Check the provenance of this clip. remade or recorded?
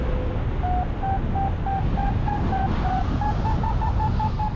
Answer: recorded